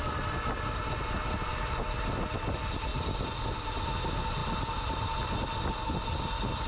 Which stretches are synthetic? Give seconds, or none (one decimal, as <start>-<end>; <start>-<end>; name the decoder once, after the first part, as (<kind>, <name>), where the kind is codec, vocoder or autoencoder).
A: 2.9-4.0 (vocoder, BigVGAN v2)